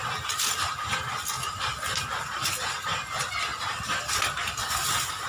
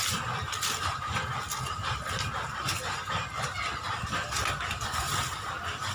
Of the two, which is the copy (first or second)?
second